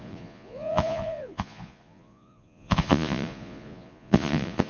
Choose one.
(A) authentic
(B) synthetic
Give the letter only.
B